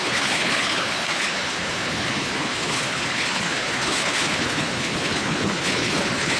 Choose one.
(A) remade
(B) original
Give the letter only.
A